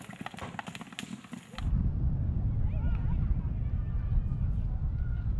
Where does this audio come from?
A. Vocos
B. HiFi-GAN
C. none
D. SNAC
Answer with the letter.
C